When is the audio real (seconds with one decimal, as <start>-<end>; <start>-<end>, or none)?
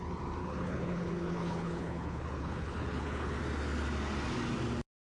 0.0-0.4; 3.4-5.0